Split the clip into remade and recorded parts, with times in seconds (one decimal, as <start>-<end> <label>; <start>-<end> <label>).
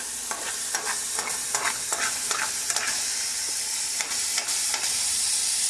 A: 0.0-1.9 recorded; 1.9-5.3 remade; 5.3-5.7 recorded